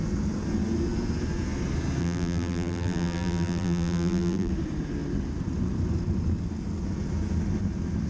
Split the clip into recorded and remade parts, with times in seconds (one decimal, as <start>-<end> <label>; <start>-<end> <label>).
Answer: 0.0-2.0 recorded; 2.0-4.5 remade; 4.5-8.1 recorded